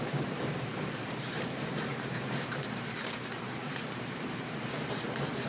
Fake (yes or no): yes